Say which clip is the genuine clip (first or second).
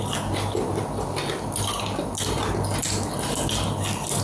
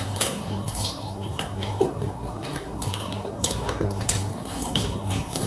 first